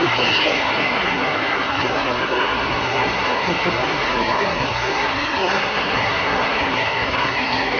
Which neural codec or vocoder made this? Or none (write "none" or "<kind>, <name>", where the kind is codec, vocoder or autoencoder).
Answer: codec, SNAC